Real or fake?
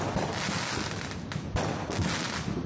real